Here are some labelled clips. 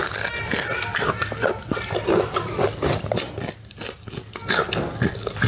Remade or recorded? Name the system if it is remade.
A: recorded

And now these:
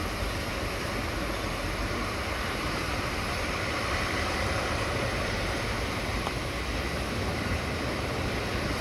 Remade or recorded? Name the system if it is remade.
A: remade, vocoder, BigVGAN v2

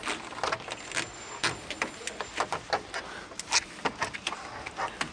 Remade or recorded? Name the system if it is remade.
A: recorded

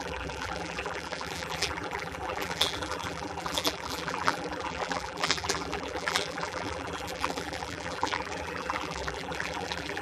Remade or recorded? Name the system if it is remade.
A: remade, vocoder, BigVGAN v2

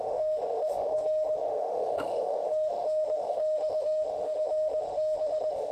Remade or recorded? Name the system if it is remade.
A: remade, autoencoder, DAC-VAE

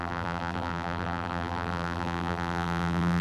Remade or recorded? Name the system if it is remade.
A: remade, vocoder, BigVGAN v2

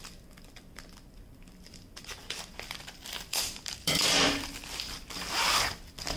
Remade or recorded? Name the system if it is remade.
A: remade, vocoder, BigVGAN v2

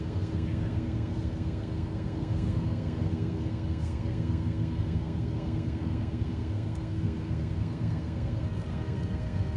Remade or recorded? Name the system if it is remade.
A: remade, codec, SNAC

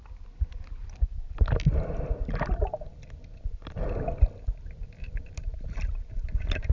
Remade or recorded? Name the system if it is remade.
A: recorded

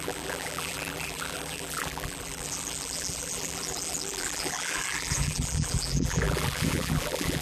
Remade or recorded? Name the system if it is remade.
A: remade, vocoder, BigVGAN v2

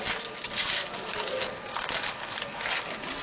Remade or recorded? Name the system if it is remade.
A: recorded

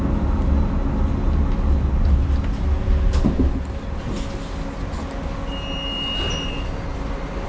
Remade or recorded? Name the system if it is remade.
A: recorded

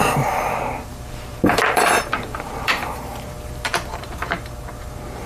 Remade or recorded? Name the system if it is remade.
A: remade, vocoder, BigVGAN v2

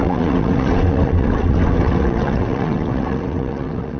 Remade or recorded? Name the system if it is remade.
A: remade, vocoder, WaveNeXt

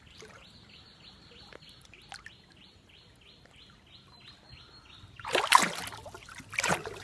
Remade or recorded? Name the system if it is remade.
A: recorded